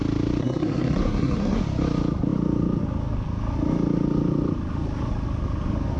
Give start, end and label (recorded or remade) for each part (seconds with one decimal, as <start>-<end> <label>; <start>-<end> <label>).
0.0-0.4 recorded; 0.4-1.6 remade; 1.6-6.0 recorded